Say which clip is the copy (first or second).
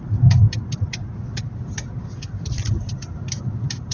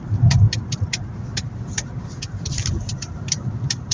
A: second